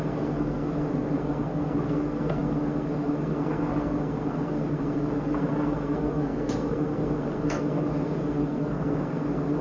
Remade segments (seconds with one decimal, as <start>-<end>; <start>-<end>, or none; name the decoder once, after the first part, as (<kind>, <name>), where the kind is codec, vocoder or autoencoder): 0.0-9.6 (codec, SNAC)